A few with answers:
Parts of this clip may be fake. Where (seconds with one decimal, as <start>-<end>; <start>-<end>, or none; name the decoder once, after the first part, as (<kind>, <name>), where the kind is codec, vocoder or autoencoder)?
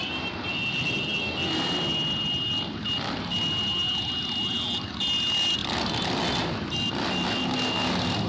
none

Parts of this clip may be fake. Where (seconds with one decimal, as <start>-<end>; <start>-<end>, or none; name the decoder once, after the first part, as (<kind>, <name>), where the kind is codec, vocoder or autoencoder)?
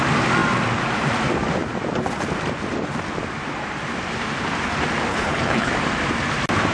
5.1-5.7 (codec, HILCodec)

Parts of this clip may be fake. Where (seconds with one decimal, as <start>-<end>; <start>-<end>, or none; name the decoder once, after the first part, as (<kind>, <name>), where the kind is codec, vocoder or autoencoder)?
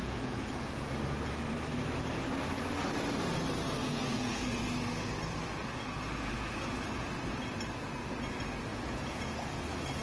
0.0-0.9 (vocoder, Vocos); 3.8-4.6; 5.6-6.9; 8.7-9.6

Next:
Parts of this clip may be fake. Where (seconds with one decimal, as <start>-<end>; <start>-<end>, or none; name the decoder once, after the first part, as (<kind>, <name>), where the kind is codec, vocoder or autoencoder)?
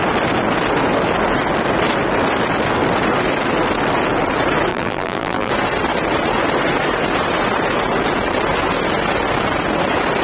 4.7-5.5 (vocoder, BigVGAN v2)